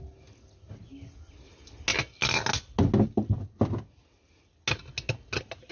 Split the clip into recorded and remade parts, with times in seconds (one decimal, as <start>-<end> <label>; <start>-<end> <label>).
0.0-5.7 recorded